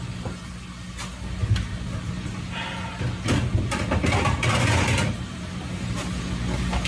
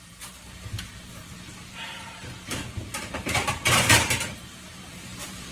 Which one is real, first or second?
first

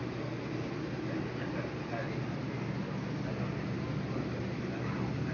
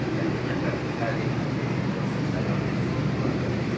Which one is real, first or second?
first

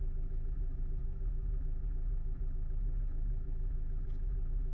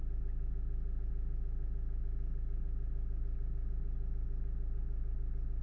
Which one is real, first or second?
second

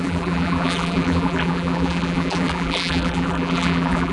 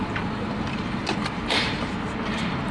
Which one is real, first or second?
second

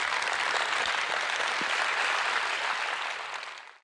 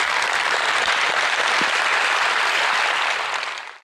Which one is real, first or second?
first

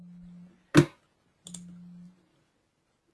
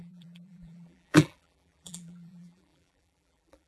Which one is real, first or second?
first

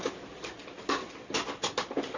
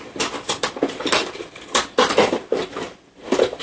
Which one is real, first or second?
first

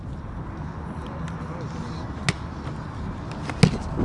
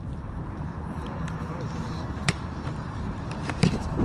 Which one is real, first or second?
first